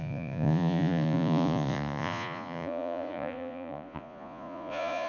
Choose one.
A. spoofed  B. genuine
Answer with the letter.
A